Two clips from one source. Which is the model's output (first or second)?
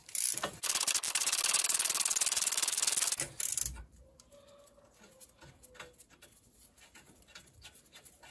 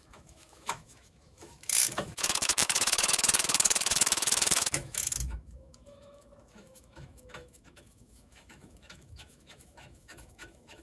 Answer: second